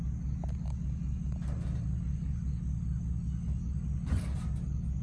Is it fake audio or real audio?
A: real